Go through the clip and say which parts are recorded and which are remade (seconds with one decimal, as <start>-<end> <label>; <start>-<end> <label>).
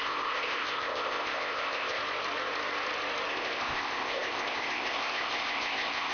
0.0-2.0 remade; 2.0-3.3 recorded; 3.3-6.1 remade